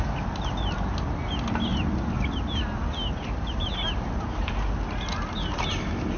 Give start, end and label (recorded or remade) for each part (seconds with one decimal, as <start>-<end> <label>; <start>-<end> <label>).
0.0-6.2 recorded